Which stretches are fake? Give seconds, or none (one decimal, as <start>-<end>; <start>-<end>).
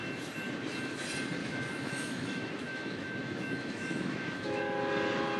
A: 1.4-4.6